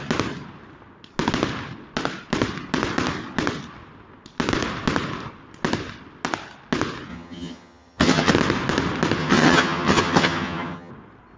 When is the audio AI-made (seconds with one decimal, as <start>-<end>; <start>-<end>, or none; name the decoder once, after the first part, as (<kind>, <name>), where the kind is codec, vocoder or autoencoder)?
7.1-8.3 (vocoder, HiFi-GAN); 9.2-10.9